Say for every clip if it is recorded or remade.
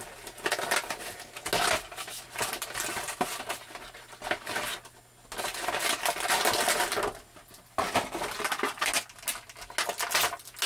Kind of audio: recorded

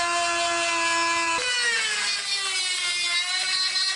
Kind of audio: recorded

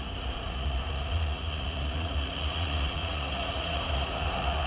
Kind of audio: remade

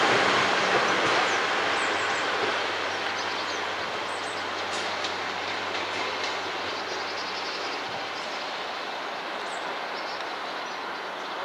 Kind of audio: recorded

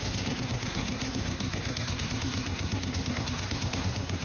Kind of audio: remade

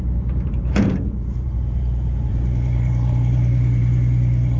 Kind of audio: remade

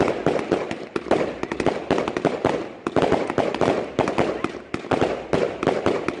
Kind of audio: recorded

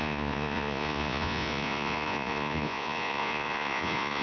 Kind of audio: remade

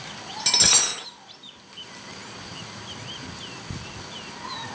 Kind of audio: recorded